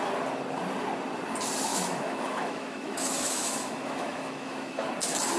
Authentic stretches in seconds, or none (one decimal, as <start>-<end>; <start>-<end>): 0.0-1.7; 4.9-5.4